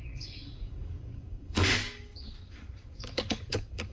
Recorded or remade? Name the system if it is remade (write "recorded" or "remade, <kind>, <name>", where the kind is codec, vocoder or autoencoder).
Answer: remade, codec, DAC